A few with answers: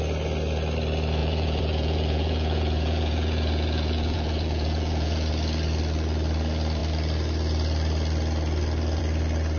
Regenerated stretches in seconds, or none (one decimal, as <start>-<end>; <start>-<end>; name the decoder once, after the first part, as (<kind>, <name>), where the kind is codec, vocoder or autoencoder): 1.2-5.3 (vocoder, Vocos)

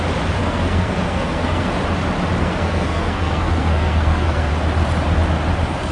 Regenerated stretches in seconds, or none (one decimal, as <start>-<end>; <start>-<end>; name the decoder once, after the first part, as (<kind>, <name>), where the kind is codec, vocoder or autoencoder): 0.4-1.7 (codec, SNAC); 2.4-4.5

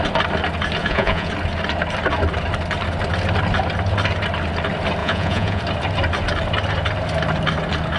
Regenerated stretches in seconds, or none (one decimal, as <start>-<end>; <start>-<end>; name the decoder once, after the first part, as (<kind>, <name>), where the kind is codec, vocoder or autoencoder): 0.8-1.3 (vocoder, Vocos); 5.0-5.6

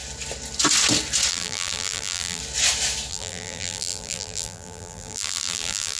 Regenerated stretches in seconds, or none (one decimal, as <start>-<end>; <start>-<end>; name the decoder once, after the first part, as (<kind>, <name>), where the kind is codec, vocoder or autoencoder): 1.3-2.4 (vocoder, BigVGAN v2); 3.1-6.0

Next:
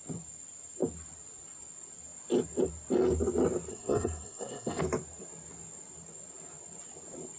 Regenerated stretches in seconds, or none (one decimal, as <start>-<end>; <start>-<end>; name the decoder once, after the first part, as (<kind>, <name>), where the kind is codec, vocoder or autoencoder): 3.7-4.8 (codec, SNAC)